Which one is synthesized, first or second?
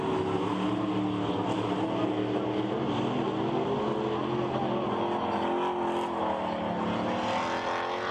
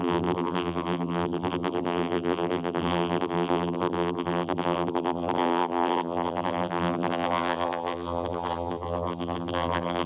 second